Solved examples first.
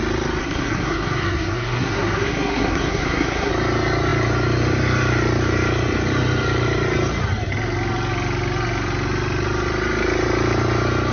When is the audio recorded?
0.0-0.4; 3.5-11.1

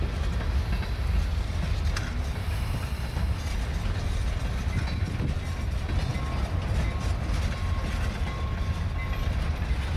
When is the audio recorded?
0.0-10.0

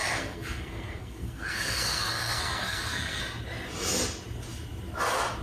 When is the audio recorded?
3.2-5.4

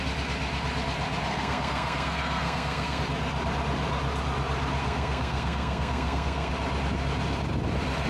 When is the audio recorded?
0.0-1.3; 3.0-4.8; 6.5-8.1

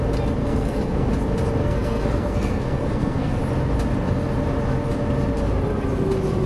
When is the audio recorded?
0.0-0.4; 1.1-1.6; 3.4-6.5

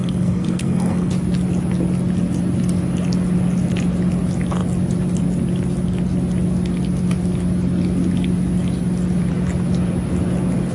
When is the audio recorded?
1.1-10.7